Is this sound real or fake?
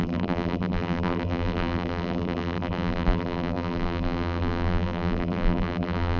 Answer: fake